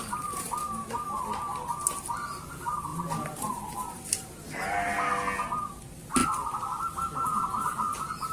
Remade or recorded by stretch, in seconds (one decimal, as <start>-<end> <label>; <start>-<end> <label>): 0.0-0.6 recorded; 0.6-1.2 remade; 1.2-8.3 recorded